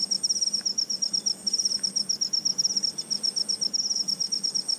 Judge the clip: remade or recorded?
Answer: recorded